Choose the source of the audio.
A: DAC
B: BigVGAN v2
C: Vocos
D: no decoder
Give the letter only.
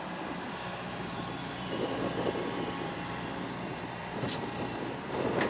B